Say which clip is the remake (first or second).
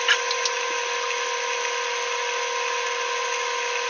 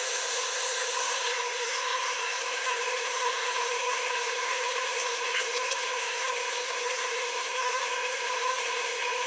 second